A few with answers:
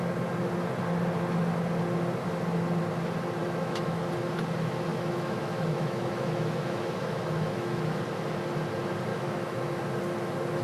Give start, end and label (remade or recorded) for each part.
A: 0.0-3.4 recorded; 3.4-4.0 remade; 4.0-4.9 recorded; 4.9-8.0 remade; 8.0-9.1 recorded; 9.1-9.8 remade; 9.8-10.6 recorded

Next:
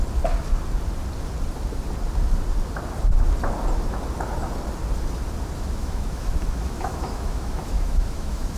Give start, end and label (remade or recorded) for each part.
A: 0.0-5.8 recorded; 5.8-8.6 remade

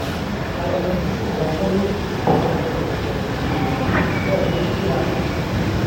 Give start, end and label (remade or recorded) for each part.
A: 0.0-0.7 recorded; 0.7-1.4 remade; 1.4-5.9 recorded